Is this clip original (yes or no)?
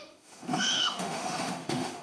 no